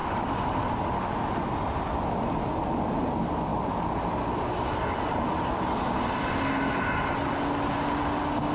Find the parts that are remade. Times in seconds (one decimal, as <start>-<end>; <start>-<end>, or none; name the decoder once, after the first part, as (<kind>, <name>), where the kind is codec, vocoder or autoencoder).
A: none